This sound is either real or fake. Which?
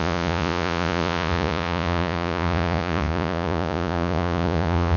fake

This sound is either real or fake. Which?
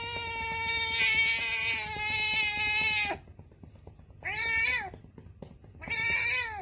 real